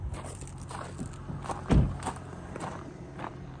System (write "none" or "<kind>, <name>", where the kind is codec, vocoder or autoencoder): vocoder, BigVGAN v2